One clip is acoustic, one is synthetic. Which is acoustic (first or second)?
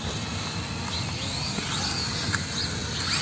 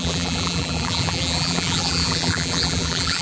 first